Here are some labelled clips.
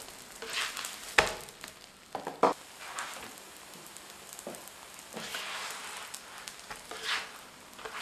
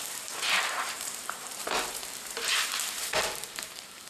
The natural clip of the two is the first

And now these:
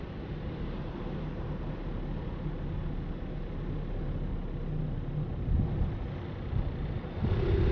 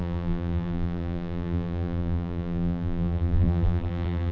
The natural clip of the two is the first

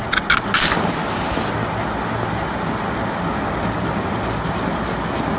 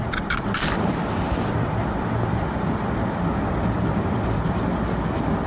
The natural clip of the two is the first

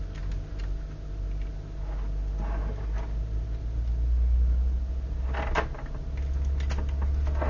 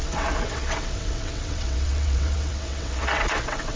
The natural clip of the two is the first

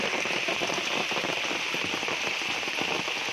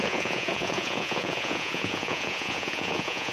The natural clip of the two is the first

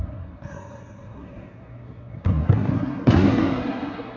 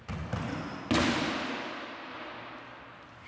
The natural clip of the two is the second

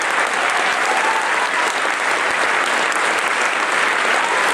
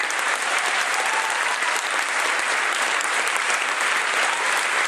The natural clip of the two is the first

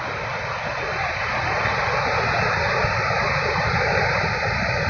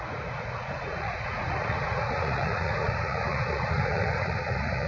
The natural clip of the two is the first